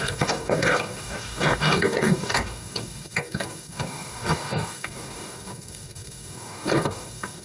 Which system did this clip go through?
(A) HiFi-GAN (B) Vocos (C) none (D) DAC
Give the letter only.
D